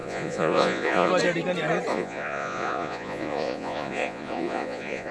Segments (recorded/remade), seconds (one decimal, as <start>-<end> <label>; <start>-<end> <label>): 0.0-1.1 remade; 1.1-1.9 recorded; 1.9-5.1 remade